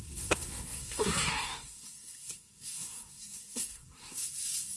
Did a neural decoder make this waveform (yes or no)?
yes